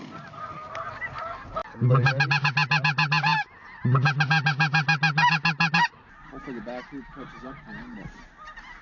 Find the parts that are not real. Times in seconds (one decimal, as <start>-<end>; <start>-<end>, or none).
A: none